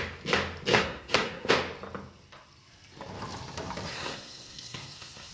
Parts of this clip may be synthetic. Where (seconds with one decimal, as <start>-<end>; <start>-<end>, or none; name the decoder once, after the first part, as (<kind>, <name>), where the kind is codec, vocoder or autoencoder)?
0.7-1.5 (codec, SNAC); 3.9-5.3